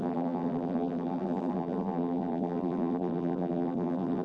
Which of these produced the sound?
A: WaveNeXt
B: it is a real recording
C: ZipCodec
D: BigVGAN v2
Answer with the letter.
D